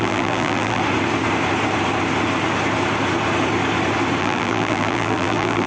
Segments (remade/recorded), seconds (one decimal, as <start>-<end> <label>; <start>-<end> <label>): 0.0-0.8 remade; 0.8-4.2 recorded; 4.2-5.7 remade